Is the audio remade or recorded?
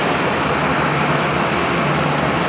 recorded